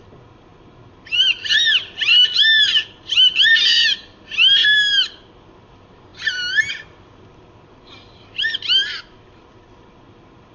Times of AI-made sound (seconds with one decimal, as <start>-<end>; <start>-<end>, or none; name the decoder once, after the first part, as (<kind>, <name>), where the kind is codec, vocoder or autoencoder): none